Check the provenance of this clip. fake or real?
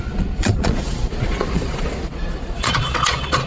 fake